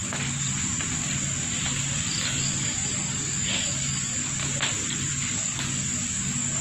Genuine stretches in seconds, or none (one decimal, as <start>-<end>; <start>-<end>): 0.0-2.3; 4.4-5.1